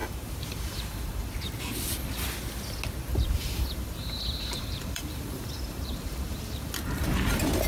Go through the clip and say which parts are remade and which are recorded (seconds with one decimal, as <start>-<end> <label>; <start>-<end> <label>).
0.0-1.3 remade; 1.3-3.1 recorded; 3.1-6.7 remade; 6.7-7.7 recorded